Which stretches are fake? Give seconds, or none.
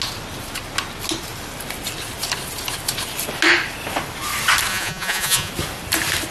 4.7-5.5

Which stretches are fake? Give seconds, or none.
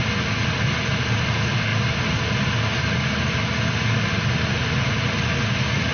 none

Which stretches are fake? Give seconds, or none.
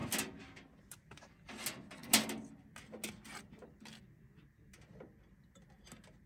none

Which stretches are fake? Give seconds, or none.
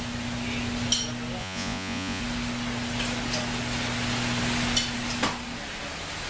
1.4-2.2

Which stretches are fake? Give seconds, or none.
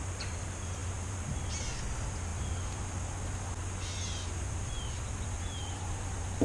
none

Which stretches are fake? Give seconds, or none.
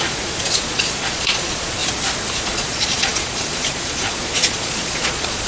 0.0-1.8; 2.3-5.5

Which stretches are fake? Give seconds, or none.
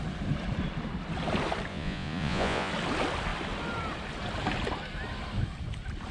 1.7-2.7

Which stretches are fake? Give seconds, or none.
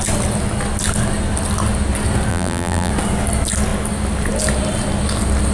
2.3-2.9